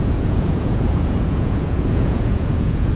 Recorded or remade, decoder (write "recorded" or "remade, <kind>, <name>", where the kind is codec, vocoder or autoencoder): remade, vocoder, Vocos